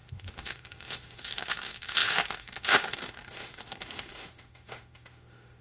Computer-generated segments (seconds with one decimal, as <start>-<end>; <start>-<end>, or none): 0.0-5.6